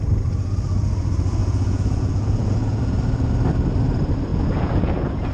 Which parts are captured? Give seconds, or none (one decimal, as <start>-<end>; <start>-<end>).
0.0-1.4; 2.8-4.3